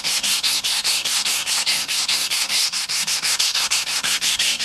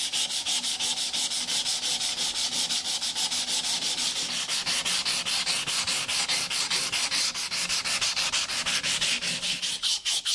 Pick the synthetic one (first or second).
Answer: first